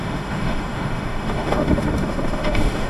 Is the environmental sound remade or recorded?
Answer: remade